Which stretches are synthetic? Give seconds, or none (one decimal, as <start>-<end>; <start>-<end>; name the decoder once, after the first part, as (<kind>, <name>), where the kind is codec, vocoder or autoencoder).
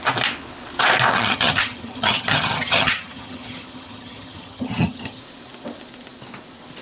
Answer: 1.1-5.2 (vocoder, HiFi-GAN)